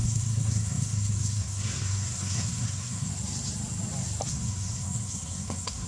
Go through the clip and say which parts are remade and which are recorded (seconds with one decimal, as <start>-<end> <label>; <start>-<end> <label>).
0.0-3.1 remade; 3.1-4.3 recorded; 4.3-5.9 remade